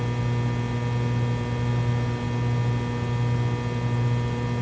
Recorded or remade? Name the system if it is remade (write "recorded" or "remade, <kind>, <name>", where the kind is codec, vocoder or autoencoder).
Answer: recorded